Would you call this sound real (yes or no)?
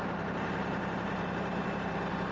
no